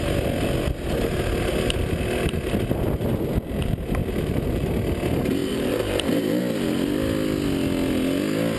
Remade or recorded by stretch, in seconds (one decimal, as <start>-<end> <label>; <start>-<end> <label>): 0.0-4.0 recorded; 4.0-4.7 remade; 4.7-5.4 recorded; 5.4-6.4 remade; 6.4-8.6 recorded

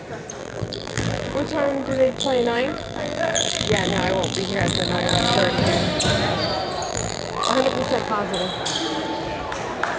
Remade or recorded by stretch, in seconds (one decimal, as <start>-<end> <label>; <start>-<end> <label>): 0.0-0.4 recorded; 0.4-5.5 remade; 5.5-6.9 recorded; 6.9-8.1 remade; 8.1-10.0 recorded